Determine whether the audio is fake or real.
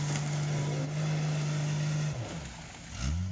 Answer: real